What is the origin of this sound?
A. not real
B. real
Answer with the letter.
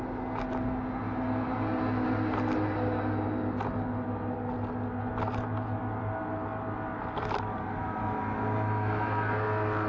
B